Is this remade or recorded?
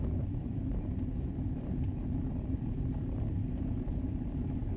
recorded